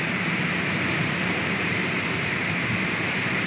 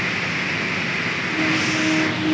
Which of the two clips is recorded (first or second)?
second